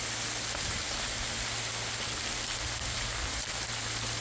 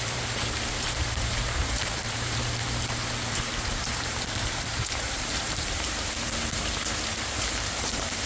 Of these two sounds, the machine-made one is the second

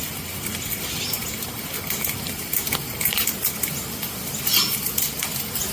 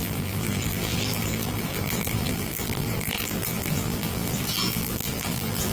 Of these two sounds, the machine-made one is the second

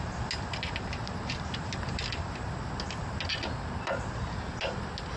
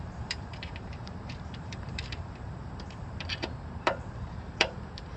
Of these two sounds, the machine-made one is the second